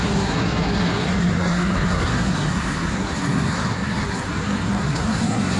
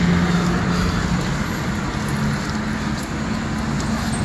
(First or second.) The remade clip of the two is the first